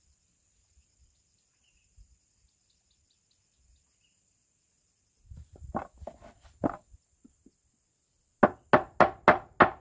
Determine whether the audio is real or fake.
real